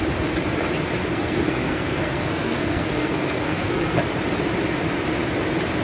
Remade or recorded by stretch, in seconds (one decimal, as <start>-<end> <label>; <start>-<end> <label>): 0.0-1.0 recorded; 1.0-4.0 remade; 4.0-5.8 recorded